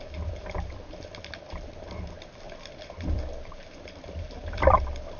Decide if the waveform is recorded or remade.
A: recorded